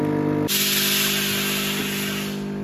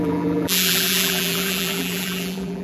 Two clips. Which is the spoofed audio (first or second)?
second